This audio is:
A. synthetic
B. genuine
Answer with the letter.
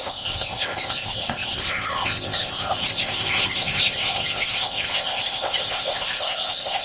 A